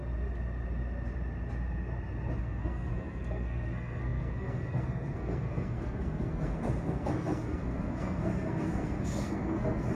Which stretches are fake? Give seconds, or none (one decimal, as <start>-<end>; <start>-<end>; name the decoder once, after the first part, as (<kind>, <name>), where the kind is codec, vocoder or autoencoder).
2.4-9.9 (codec, SNAC)